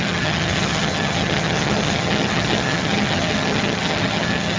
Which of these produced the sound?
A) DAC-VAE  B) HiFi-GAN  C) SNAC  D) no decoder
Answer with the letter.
B